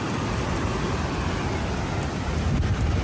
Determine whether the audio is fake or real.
real